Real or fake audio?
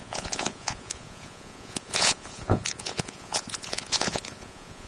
fake